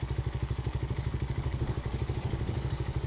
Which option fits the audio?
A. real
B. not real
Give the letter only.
B